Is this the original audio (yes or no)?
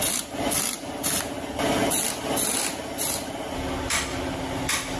yes